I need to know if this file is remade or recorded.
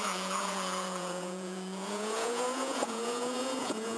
remade